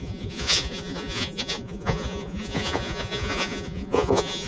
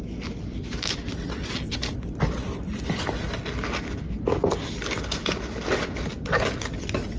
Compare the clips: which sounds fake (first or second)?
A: first